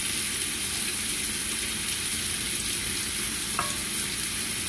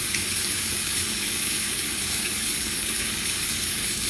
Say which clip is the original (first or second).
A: first